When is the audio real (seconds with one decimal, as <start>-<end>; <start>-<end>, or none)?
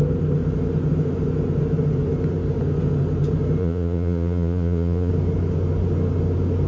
0.0-3.6; 5.1-6.7